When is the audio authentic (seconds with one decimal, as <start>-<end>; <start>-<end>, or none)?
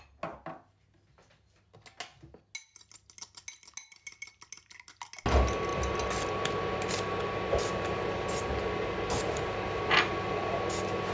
0.0-11.1